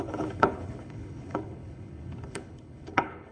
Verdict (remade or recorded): remade